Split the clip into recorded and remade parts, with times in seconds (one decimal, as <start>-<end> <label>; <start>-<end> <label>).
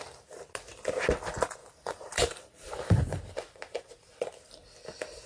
0.0-1.6 recorded; 1.6-3.4 remade; 3.4-5.3 recorded